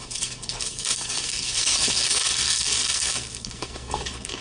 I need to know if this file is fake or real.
fake